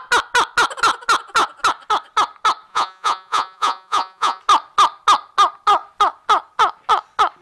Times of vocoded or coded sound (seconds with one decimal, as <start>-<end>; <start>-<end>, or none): 2.7-4.4